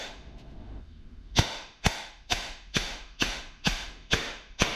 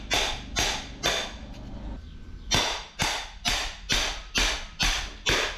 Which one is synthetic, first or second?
first